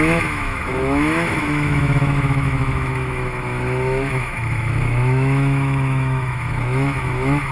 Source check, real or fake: fake